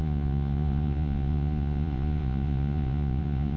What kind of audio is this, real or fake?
fake